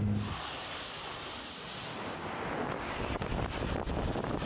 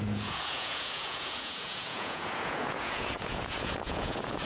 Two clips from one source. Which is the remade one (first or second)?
second